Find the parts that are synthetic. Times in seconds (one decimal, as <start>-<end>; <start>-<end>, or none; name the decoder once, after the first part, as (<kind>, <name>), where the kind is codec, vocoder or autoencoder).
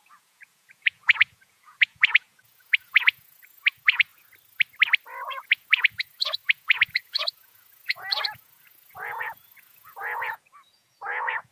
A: 0.0-4.1 (vocoder, Vocos); 5.3-11.5